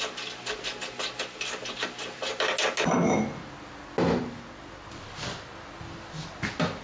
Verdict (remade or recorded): recorded